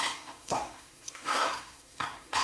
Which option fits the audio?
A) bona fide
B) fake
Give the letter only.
B